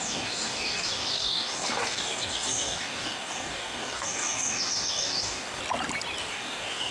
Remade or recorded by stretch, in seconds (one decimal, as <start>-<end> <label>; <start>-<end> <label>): 0.0-5.6 remade; 5.6-6.3 recorded; 6.3-6.9 remade